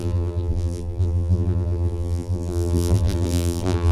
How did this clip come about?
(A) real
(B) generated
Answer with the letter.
B